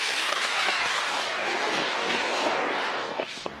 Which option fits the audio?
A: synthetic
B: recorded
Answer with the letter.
A